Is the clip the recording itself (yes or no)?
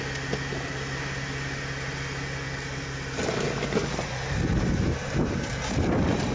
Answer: yes